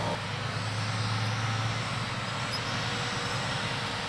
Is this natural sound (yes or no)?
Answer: yes